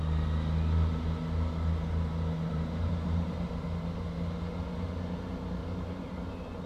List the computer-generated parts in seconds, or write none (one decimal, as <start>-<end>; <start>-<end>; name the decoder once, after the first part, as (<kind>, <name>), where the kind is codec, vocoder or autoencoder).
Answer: 2.5-3.5 (vocoder, BigVGAN v2); 5.6-6.3